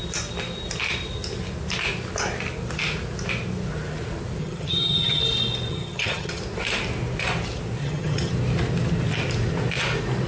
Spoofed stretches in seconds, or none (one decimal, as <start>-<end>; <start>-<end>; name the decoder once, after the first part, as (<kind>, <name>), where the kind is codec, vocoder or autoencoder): 4.4-5.2 (vocoder, HiFi-GAN); 5.7-6.4; 7.8-8.3